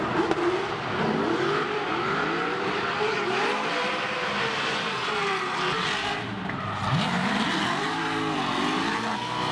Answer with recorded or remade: recorded